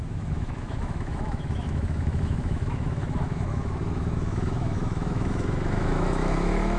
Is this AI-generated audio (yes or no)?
yes